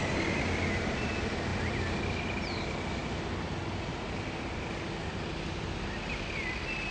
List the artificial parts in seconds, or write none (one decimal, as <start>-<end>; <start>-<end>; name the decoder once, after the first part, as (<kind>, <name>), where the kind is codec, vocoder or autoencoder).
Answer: 1.5-2.0 (vocoder, BigVGAN v2)